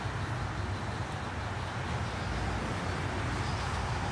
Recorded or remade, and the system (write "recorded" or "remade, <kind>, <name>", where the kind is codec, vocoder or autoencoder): recorded